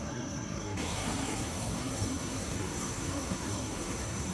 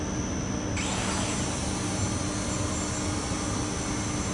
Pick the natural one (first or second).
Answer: second